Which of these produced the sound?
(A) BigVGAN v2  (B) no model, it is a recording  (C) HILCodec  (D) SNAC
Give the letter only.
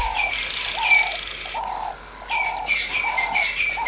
B